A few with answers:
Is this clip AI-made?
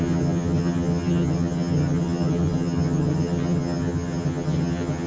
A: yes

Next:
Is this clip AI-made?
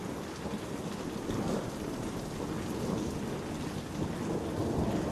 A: no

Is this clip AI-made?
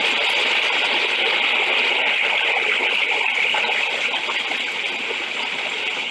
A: no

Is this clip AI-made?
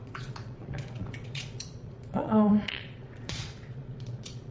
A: yes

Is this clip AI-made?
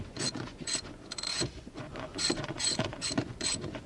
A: yes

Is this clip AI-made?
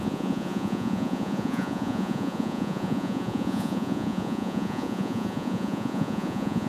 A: yes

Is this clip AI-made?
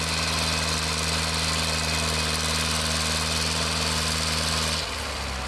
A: no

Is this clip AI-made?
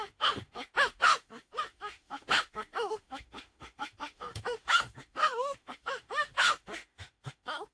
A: yes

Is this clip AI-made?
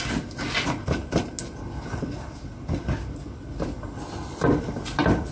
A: no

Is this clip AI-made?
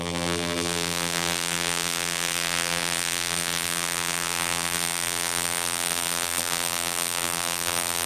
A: yes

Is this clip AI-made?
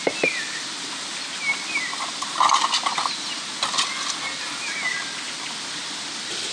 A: no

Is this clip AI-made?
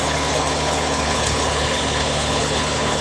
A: yes